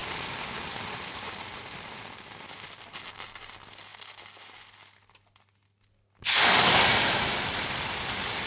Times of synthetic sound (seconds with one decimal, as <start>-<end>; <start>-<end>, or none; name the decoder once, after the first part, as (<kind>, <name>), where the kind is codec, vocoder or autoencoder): 0.0-2.3 (vocoder, BigVGAN v2)